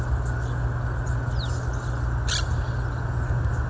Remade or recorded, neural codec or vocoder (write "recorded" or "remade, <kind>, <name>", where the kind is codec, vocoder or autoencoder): recorded